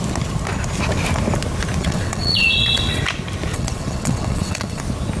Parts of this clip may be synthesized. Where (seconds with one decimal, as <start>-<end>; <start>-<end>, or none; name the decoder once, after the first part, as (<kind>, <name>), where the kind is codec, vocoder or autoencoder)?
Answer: 1.8-3.0 (vocoder, WaveNeXt); 3.5-4.8